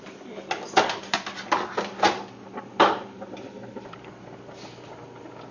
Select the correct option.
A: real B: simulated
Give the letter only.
A